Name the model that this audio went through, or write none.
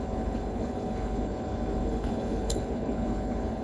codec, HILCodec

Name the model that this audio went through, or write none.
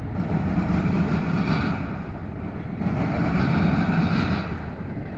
vocoder, BigVGAN v2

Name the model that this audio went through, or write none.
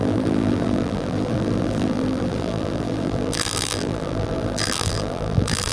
vocoder, BigVGAN v2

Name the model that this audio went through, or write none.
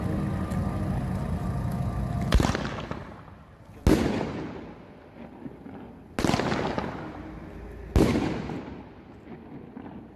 none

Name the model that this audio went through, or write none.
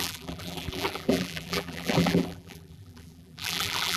vocoder, BigVGAN v2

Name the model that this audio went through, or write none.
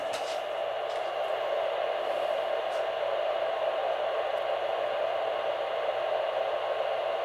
none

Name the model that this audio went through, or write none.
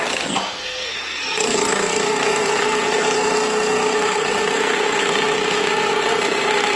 codec, SNAC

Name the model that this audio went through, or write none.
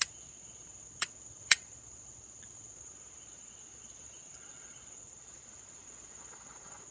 vocoder, Vocos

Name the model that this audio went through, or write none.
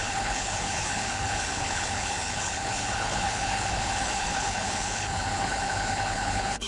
codec, HILCodec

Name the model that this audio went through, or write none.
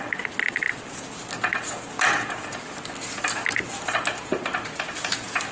none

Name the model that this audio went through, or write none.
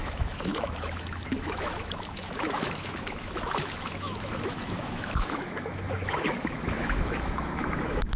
autoencoder, DAC-VAE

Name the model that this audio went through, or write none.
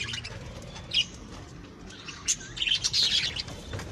none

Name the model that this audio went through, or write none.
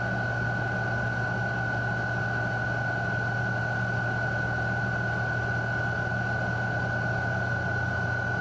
none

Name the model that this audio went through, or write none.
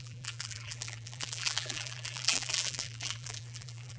vocoder, BigVGAN v2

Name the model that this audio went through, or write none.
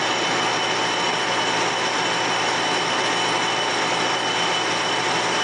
none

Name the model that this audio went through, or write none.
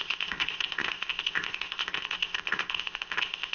codec, ZipCodec